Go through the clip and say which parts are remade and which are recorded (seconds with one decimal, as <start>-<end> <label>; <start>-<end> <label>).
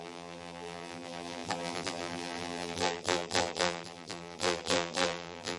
0.0-5.6 remade